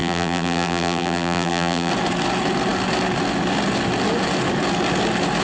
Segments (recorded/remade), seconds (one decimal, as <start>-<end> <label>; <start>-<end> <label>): 0.0-1.9 remade; 1.9-5.4 recorded